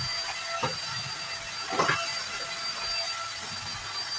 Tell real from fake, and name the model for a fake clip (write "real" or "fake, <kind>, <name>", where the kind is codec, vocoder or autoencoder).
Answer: real